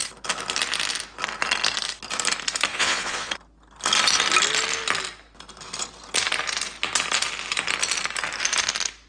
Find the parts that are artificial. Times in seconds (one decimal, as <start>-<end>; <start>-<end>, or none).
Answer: 2.7-3.3